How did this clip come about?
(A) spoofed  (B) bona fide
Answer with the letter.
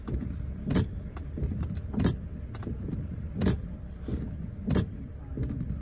A